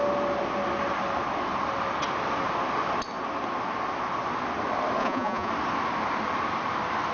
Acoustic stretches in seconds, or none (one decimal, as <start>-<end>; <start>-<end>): 0.0-5.0; 5.5-7.1

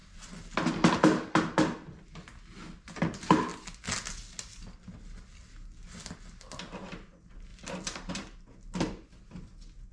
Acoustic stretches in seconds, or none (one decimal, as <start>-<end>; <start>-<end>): 0.0-9.9

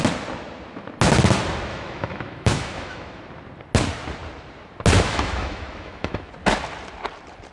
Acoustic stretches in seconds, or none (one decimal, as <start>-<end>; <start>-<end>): 0.0-1.7; 3.2-5.1; 6.3-7.5

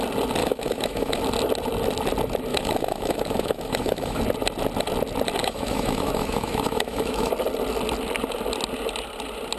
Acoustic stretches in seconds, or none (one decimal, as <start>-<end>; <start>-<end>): 0.0-0.4; 1.2-2.5; 4.2-5.4; 7.3-9.6